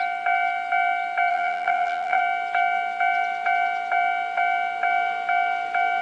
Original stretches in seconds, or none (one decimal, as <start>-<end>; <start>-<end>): 0.0-1.3; 2.2-6.0